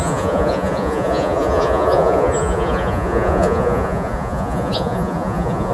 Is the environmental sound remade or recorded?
remade